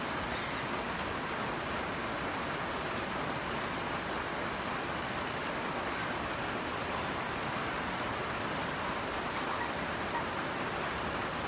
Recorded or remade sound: recorded